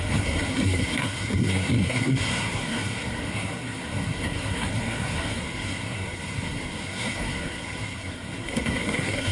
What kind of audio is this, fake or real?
fake